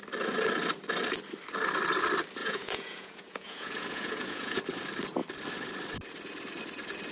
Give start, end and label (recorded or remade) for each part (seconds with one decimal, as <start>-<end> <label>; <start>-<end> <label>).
0.0-2.4 recorded; 2.4-4.6 remade; 4.6-7.1 recorded